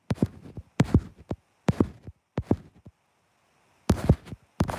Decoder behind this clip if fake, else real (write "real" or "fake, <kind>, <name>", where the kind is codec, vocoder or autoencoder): real